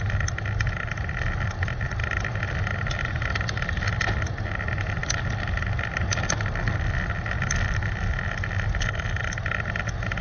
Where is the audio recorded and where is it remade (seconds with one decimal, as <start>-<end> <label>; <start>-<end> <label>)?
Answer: 0.0-10.2 recorded